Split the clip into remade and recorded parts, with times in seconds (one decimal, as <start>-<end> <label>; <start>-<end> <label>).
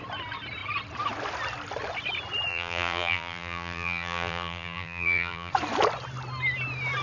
0.0-2.5 recorded; 2.5-5.5 remade; 5.5-7.0 recorded